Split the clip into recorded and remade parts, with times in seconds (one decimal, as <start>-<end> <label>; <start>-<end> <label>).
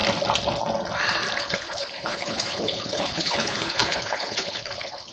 0.0-1.4 recorded; 1.4-5.1 remade